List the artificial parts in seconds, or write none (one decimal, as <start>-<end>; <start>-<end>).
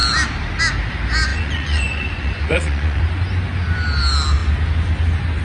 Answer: 1.3-3.0